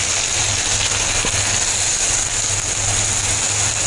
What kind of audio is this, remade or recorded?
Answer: recorded